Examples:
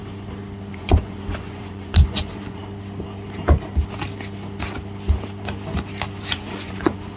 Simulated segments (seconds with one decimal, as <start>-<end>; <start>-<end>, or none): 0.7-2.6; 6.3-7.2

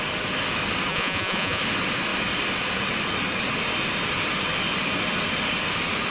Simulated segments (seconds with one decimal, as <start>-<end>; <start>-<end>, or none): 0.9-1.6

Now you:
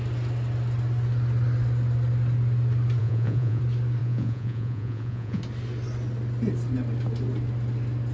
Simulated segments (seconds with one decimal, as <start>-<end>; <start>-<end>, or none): 3.0-3.6; 4.0-5.4

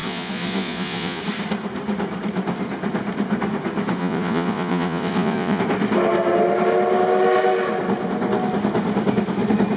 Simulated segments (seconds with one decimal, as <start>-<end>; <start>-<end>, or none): 0.0-1.2; 4.0-5.6

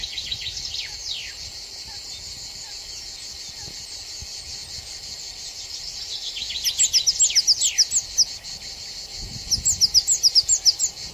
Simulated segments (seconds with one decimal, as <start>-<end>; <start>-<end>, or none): none

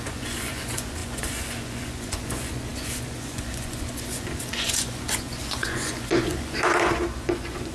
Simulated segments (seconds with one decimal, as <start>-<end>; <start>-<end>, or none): 0.0-7.7

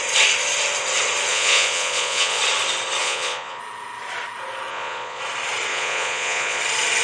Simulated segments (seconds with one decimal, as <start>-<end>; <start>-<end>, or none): 1.3-2.4; 3.0-3.6; 4.7-5.2; 5.7-6.6